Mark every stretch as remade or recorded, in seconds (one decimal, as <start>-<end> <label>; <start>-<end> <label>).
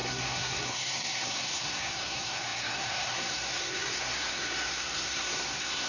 0.0-5.9 remade